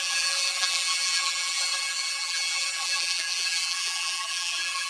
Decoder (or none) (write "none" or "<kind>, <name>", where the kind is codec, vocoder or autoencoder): vocoder, BigVGAN v2